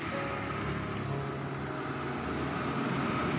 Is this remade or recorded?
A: recorded